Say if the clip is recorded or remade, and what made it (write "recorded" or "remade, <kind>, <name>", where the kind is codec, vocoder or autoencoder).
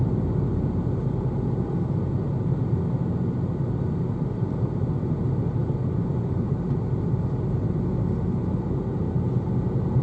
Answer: recorded